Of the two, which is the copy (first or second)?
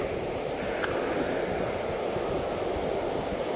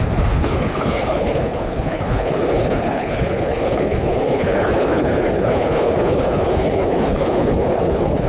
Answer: second